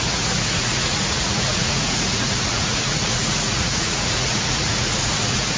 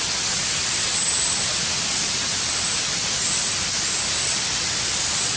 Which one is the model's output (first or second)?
first